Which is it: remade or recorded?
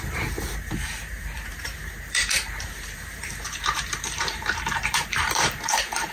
remade